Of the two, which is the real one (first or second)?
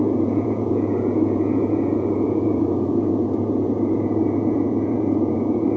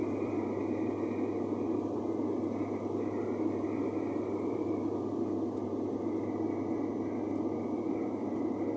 second